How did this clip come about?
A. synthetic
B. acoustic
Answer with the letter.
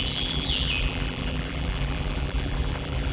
A